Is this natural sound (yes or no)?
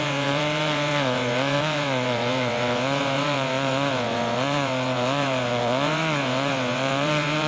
no